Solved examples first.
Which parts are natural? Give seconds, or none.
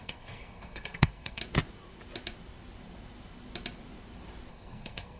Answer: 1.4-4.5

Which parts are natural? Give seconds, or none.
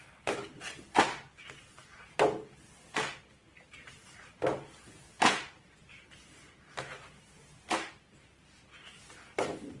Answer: 0.0-9.8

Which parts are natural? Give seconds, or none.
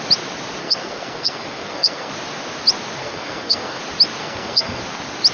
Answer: 0.0-0.6; 2.1-3.0; 3.8-4.2; 4.8-5.3